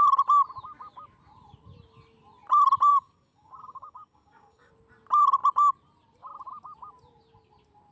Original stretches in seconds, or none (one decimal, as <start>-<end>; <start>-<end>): 0.0-2.9; 4.7-7.9